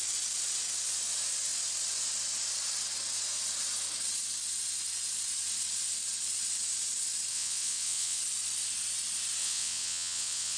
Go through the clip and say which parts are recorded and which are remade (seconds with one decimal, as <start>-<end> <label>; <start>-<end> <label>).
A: 0.0-7.3 recorded; 7.3-8.2 remade; 8.2-9.4 recorded; 9.4-10.6 remade